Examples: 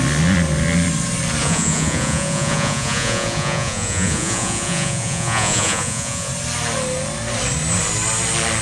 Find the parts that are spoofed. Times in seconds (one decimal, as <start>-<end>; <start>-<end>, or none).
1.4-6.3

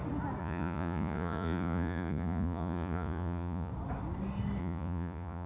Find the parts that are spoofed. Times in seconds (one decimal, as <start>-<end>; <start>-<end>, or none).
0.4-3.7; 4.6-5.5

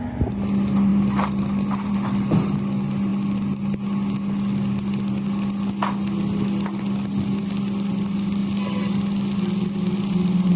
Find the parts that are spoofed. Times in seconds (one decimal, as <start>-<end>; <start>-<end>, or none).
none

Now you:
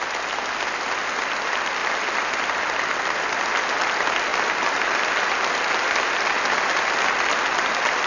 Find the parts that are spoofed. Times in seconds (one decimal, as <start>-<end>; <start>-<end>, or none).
none

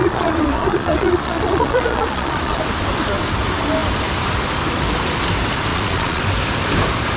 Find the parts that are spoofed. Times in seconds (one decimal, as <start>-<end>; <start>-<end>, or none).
0.0-2.6; 5.7-6.2

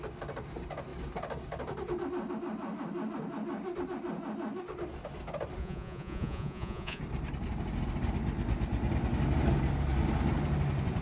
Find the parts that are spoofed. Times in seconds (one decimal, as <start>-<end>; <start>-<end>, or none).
5.6-7.0

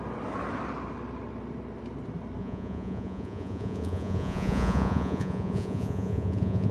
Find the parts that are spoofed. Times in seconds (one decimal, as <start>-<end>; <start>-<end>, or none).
2.4-6.7